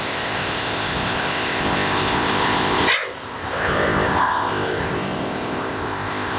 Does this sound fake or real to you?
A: fake